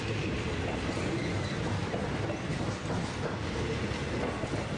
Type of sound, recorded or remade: recorded